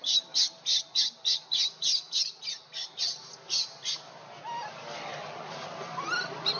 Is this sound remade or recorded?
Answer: recorded